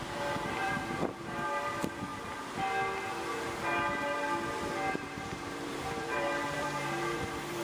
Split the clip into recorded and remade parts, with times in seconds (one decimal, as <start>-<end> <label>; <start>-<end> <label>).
0.0-2.1 remade; 2.1-4.9 recorded; 4.9-7.6 remade